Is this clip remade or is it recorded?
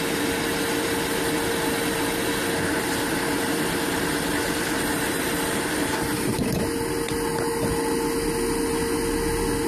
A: recorded